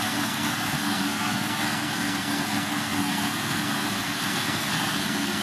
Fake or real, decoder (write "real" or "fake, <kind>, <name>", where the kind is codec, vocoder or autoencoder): fake, codec, SNAC